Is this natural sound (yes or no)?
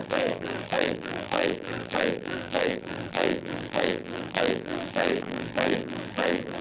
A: no